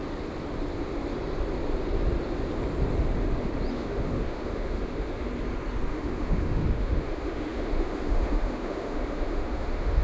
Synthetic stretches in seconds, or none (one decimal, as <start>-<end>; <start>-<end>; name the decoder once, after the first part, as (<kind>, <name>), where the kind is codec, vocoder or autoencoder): 3.7-5.3 (autoencoder, DAC-VAE); 5.9-10.0